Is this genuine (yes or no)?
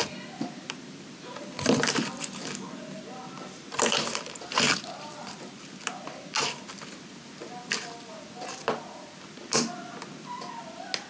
yes